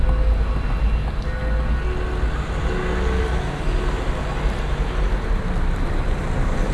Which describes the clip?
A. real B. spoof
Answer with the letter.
A